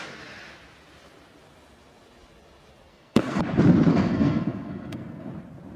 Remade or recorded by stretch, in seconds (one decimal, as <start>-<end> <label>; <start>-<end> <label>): 0.0-2.9 recorded; 2.9-3.4 remade; 3.4-3.9 recorded; 3.9-5.3 remade; 5.3-5.8 recorded